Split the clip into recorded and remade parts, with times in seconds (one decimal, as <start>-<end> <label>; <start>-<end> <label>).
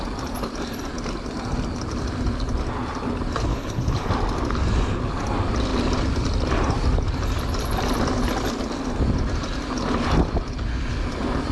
0.0-3.5 recorded; 3.5-4.1 remade; 4.1-11.5 recorded